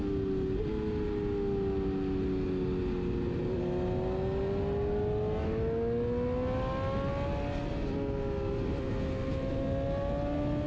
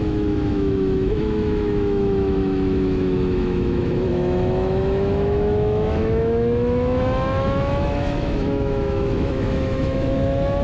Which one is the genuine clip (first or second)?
first